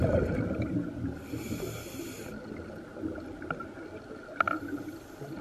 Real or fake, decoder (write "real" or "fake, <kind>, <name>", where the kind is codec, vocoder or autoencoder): real